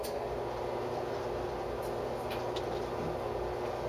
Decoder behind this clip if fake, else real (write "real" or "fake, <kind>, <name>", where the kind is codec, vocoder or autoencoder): real